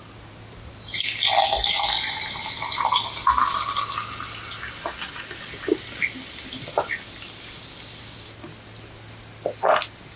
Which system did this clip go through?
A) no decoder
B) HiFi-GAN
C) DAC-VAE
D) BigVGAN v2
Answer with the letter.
A